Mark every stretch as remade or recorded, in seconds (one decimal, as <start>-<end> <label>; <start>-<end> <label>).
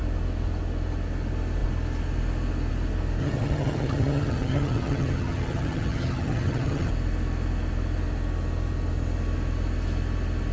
0.0-3.2 recorded; 3.2-6.9 remade; 6.9-10.5 recorded